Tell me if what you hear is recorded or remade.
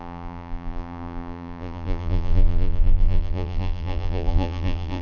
remade